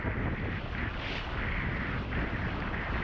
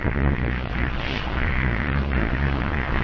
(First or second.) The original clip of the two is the first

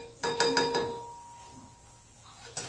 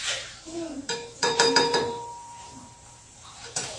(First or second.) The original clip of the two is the first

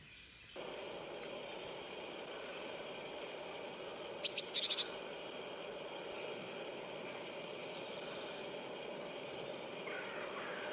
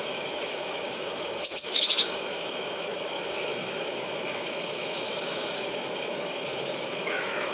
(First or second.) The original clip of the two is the first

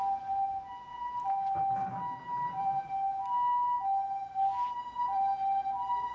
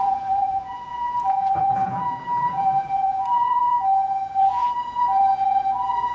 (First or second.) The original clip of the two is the first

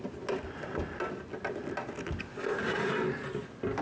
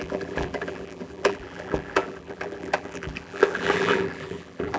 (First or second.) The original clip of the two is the first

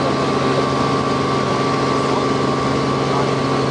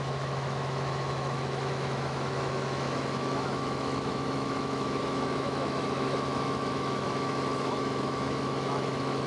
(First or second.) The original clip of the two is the first